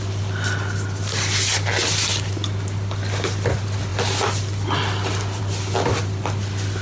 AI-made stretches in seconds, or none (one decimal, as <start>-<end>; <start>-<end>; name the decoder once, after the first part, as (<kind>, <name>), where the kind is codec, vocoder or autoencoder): none